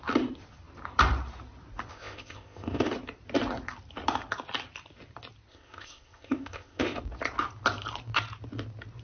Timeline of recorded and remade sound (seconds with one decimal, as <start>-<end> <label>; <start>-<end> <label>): 0.0-1.9 recorded; 1.9-2.9 remade; 2.9-5.5 recorded; 5.5-7.0 remade; 7.0-9.0 recorded